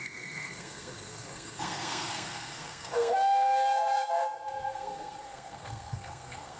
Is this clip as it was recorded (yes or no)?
no